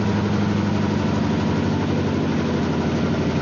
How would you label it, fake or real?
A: real